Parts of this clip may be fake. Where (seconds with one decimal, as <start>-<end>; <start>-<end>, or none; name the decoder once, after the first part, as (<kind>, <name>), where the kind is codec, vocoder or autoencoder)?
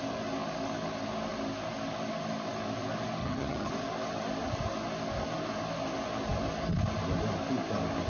3.2-3.7 (vocoder, HiFi-GAN)